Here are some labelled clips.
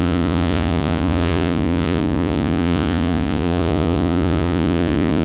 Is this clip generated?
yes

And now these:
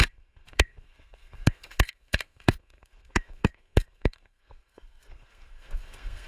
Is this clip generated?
yes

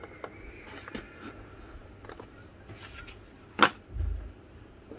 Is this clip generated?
no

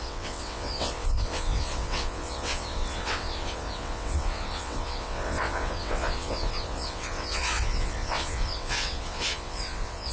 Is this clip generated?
yes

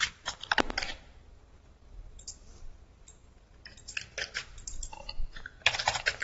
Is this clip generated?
yes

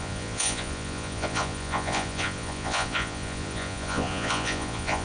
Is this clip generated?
yes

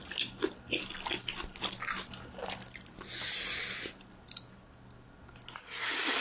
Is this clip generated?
no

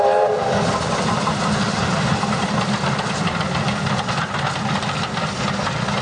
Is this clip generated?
no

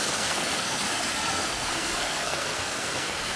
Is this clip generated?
yes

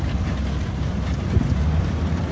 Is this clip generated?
no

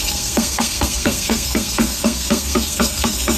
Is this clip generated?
yes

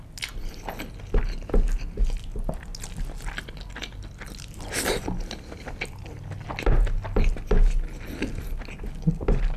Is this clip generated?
no